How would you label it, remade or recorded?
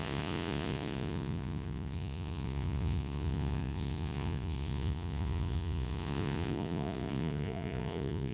remade